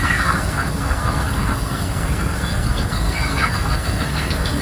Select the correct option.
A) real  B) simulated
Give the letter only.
B